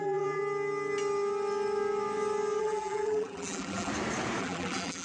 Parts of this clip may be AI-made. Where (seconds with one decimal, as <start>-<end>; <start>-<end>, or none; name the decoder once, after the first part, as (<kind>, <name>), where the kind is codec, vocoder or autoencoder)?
0.0-0.4 (vocoder, BigVGAN v2); 2.6-3.9; 4.4-5.0

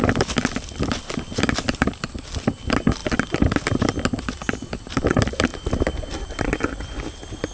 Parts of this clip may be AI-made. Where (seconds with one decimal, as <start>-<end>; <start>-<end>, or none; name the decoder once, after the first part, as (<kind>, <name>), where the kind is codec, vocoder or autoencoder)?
none

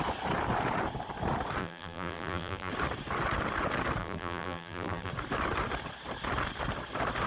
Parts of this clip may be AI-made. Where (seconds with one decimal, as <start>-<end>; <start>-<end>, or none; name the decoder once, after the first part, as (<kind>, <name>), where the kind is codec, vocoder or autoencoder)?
1.6-2.7 (vocoder, BigVGAN v2); 4.0-5.1

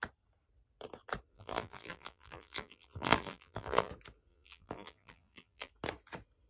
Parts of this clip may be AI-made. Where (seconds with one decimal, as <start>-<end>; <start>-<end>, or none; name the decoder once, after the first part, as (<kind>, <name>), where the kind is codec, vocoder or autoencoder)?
1.3-3.9 (vocoder, BigVGAN v2); 4.3-5.7

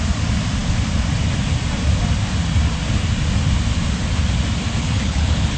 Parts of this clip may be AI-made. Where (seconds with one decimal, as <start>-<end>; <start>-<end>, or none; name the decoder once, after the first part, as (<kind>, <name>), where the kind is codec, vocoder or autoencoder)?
4.8-5.6 (codec, HILCodec)

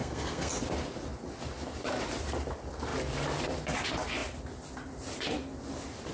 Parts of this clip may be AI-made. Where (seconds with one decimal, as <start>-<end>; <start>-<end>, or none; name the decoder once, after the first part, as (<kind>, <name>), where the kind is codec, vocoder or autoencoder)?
0.0-0.5 (codec, SNAC)